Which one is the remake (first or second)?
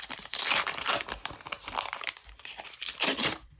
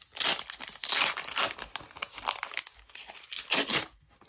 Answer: first